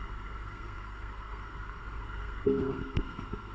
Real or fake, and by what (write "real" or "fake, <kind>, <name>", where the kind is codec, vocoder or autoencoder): fake, codec, SNAC